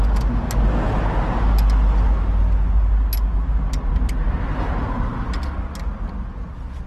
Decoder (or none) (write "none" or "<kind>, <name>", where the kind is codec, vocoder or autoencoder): none